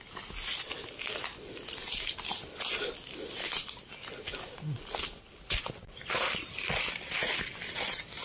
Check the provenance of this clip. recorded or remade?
recorded